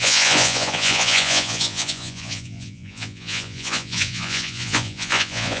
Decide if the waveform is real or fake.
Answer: fake